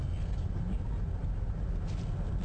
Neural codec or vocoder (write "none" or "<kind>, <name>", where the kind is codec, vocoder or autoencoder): none